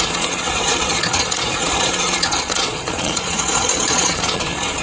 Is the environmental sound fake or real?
fake